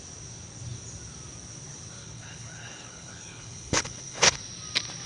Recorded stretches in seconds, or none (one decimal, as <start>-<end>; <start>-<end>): 0.0-2.0; 4.4-5.1